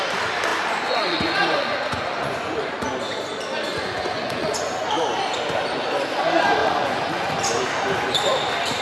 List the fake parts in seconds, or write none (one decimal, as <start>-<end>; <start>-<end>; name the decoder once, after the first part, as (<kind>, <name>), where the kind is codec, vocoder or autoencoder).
0.5-2.9 (vocoder, Vocos); 3.7-4.9; 6.6-7.3